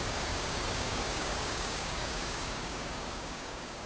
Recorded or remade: remade